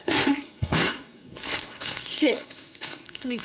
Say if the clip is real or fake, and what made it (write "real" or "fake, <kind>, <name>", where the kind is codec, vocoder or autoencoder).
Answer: fake, codec, SNAC